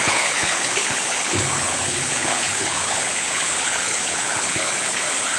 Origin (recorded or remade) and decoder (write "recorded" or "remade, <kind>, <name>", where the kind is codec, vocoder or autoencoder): remade, codec, HILCodec